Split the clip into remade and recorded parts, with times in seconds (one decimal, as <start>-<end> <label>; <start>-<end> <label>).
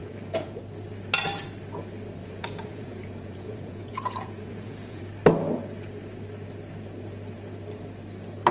0.0-0.6 remade; 0.6-2.2 recorded; 2.2-5.0 remade; 5.0-8.5 recorded